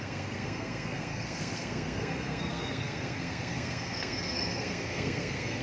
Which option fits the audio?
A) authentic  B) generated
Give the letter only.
B